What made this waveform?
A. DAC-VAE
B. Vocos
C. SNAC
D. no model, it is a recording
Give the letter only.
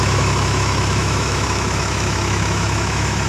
A